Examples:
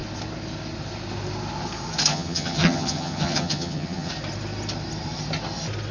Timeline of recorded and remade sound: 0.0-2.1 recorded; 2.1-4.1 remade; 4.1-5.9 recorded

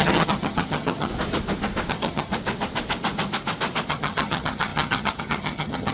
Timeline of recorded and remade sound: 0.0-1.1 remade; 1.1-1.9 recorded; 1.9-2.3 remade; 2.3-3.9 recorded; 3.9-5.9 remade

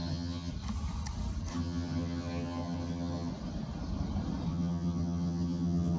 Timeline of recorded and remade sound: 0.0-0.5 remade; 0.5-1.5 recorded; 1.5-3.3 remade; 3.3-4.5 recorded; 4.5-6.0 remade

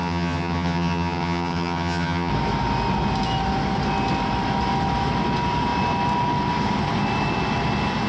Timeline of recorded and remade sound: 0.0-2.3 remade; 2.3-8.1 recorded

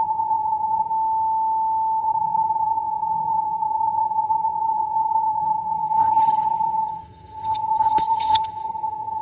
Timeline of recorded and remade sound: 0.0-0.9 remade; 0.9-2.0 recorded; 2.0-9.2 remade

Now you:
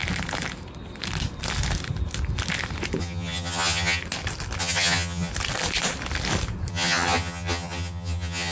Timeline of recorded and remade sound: 0.0-3.0 recorded; 3.0-4.0 remade; 4.0-4.6 recorded; 4.6-5.3 remade; 5.3-6.7 recorded; 6.7-8.5 remade